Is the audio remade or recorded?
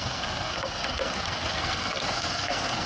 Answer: remade